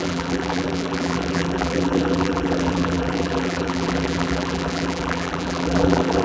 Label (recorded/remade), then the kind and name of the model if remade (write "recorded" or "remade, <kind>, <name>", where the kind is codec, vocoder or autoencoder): remade, vocoder, BigVGAN v2